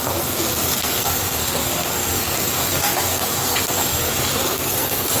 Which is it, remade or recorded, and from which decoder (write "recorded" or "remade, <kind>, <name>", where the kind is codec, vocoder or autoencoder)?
remade, codec, SNAC